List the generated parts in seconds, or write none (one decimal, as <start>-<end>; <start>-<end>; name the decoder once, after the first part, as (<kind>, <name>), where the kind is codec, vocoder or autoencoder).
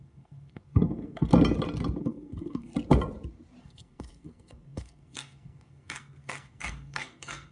0.0-1.3 (codec, SNAC); 2.0-2.7; 3.6-7.5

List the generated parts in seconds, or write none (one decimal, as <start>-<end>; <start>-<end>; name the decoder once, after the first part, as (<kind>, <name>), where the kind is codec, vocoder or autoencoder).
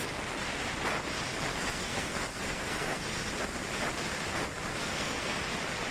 1.5-3.2 (codec, SNAC); 4.7-5.4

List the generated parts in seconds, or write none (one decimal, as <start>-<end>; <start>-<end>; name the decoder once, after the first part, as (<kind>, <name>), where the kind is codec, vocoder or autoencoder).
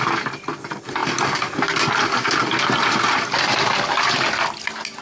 none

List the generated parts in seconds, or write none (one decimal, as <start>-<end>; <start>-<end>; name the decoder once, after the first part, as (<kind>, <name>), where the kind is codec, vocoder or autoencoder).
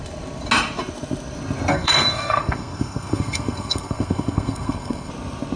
1.7-5.1 (codec, SNAC)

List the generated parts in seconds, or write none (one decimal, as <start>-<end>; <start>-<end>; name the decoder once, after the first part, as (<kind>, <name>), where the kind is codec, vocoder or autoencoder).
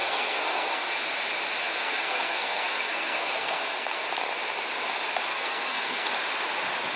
0.0-0.9 (codec, SNAC); 1.7-4.0; 5.3-6.1